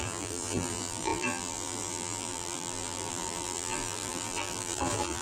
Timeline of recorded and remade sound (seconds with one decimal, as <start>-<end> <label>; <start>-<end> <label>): 0.0-5.2 remade